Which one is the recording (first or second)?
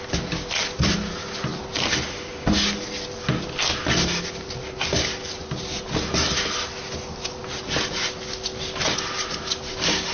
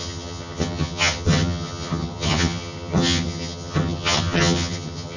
first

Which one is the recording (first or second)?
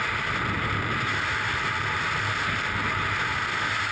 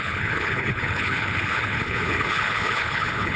first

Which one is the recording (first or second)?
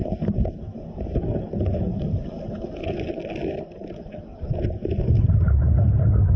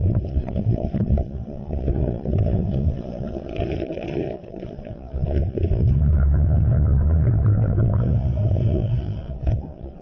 first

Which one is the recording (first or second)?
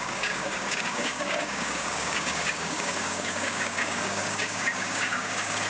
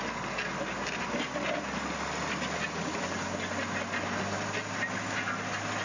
second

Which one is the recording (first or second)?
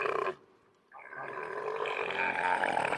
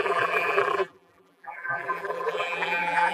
first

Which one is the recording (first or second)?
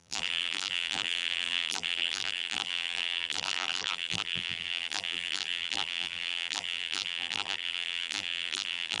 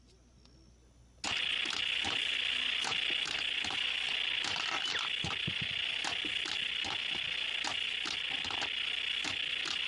second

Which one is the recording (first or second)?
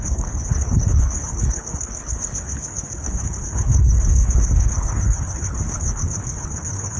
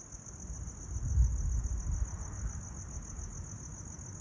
second